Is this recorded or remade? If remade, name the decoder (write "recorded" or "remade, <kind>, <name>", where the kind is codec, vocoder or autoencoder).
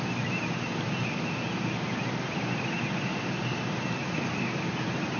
recorded